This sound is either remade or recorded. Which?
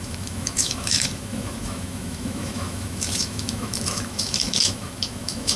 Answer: remade